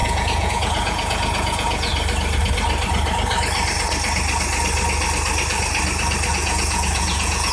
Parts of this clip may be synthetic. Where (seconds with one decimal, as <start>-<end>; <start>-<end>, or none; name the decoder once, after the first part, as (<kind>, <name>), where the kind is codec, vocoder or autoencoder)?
0.0-1.9 (vocoder, Vocos); 6.3-7.5